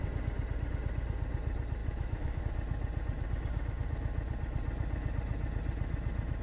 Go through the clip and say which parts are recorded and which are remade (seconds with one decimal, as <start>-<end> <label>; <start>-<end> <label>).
0.0-1.8 recorded; 1.8-2.4 remade; 2.4-6.4 recorded